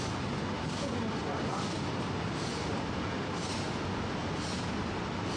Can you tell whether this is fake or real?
real